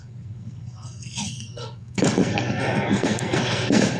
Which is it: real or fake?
fake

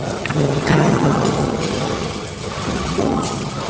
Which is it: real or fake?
fake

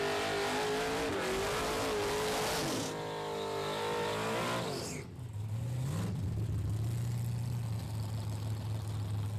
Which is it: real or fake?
real